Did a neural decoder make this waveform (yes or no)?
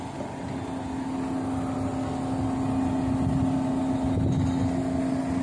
no